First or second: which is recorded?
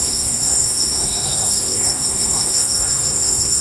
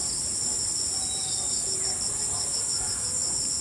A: second